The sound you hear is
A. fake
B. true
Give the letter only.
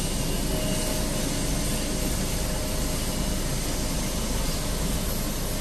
B